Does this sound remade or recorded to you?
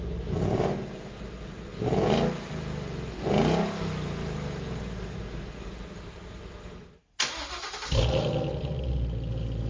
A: recorded